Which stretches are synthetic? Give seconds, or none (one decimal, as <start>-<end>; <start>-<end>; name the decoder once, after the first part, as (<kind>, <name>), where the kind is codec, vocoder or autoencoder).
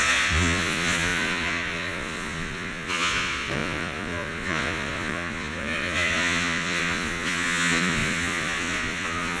0.0-9.4 (vocoder, Vocos)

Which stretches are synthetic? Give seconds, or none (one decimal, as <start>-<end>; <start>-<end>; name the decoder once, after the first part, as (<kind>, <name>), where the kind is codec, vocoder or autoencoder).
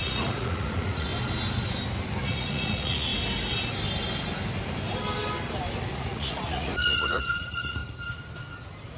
0.0-1.1 (vocoder, Vocos); 2.2-3.1; 5.9-7.8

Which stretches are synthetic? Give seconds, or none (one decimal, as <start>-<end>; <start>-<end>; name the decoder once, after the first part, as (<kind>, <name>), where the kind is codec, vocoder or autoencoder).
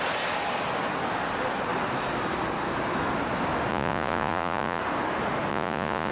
3.7-4.8 (vocoder, Vocos); 5.5-6.1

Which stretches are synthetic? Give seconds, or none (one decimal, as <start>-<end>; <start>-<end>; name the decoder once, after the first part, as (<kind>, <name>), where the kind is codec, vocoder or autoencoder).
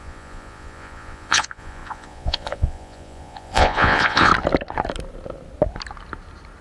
0.0-4.3 (vocoder, Vocos)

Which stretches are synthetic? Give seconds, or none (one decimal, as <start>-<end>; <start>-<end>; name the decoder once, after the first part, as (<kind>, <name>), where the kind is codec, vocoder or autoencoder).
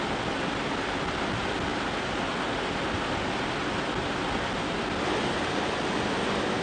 none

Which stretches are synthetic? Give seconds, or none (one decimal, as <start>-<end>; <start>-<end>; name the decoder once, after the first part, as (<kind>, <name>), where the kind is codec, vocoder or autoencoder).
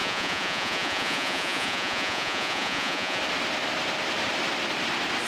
0.0-3.2 (vocoder, Vocos)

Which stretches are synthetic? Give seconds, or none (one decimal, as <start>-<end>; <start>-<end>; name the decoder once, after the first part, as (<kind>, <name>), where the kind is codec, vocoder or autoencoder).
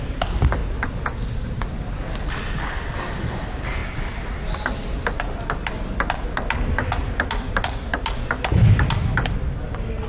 none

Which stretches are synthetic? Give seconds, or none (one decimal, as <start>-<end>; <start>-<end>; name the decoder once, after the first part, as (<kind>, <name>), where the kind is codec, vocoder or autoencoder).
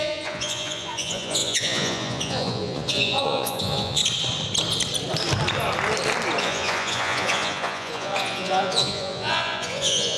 0.0-4.0 (vocoder, Vocos); 6.4-10.2